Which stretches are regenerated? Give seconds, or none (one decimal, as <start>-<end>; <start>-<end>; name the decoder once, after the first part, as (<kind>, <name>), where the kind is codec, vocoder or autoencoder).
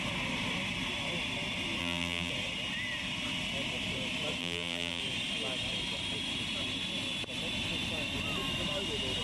1.8-2.3 (vocoder, BigVGAN v2); 4.4-5.0